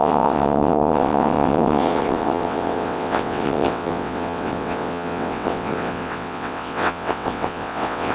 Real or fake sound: fake